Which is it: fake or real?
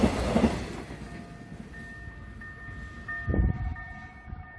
real